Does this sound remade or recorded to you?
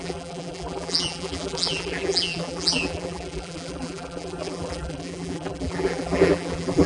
remade